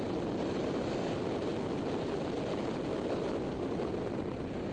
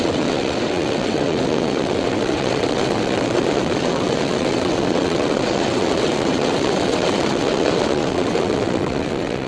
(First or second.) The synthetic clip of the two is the second